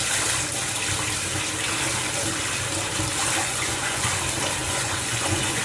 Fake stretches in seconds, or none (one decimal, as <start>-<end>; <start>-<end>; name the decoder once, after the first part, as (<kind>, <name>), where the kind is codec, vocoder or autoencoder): 3.4-4.1 (vocoder, Vocos); 4.6-5.6